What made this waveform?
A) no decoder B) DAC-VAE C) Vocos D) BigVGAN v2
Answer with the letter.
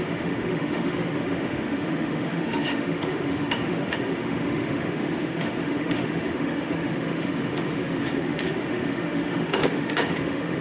B